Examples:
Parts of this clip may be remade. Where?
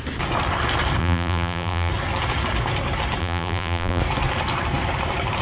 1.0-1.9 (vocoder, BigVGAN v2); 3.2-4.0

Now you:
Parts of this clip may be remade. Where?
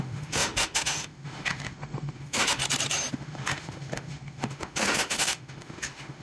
0.0-2.6 (autoencoder, DAC-VAE); 3.1-6.2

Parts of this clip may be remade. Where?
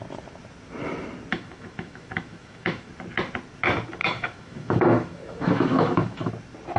1.3-2.9 (autoencoder, DAC-VAE); 4.0-6.3